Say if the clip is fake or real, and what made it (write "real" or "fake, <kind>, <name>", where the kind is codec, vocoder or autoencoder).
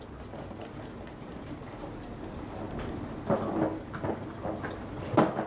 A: real